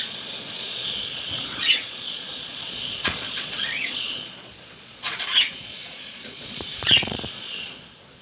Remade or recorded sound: remade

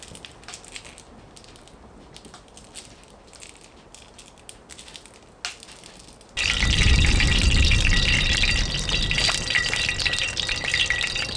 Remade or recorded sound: recorded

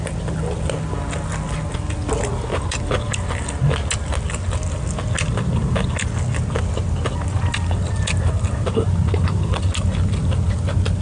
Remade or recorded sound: recorded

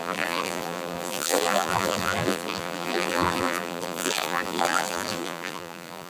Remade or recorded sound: remade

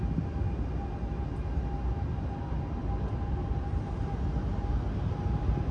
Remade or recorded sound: recorded